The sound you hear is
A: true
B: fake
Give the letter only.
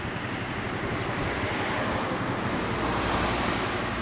A